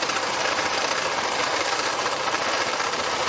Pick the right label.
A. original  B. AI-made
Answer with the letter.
B